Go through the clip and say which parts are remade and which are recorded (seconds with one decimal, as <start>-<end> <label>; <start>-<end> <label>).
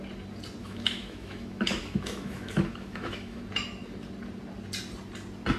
0.0-0.6 recorded; 0.6-3.4 remade; 3.4-5.6 recorded